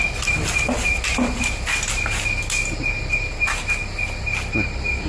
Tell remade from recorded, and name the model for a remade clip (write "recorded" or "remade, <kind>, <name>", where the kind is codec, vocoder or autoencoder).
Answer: recorded